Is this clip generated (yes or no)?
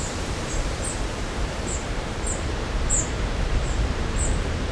yes